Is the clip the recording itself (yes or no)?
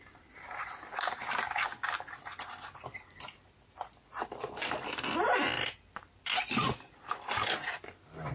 yes